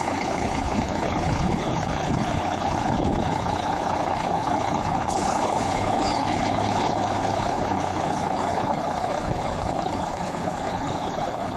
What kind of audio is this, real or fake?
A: fake